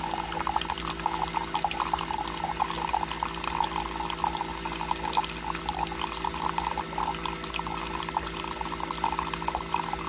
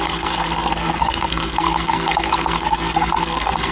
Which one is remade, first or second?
second